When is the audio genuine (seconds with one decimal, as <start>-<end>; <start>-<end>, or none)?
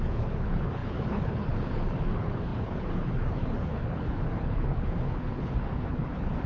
none